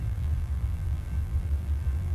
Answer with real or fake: fake